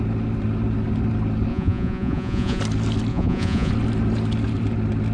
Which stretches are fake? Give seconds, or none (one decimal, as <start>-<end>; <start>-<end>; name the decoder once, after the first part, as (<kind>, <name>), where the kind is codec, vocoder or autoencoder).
1.5-2.6 (vocoder, Vocos); 3.1-3.7